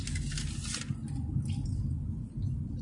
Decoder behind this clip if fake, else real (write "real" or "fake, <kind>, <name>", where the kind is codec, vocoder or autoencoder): real